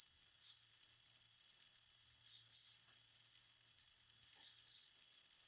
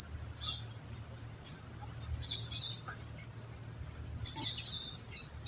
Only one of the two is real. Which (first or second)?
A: second